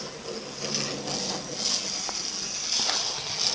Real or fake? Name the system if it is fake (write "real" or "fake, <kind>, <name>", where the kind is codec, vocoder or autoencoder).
real